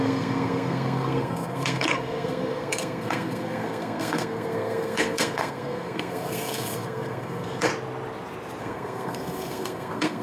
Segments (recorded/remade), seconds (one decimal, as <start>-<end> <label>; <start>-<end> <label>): 0.0-7.7 remade; 7.7-8.6 recorded; 8.6-10.2 remade